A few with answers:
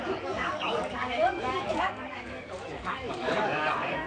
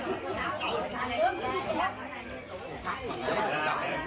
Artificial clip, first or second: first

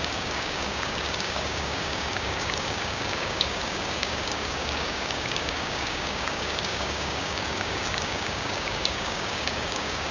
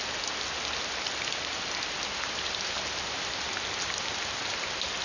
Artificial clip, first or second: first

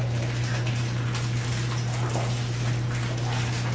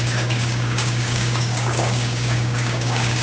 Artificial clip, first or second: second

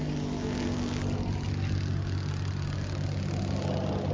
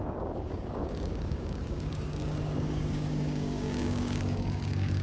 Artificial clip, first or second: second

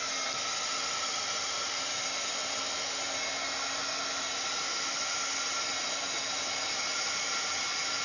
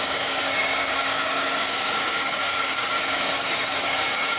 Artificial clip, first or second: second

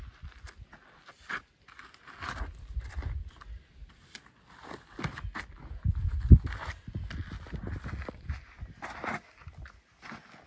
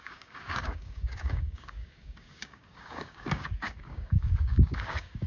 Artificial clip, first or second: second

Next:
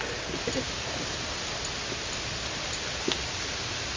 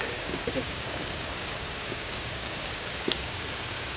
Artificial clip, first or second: second